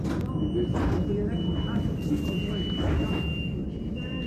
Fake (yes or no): no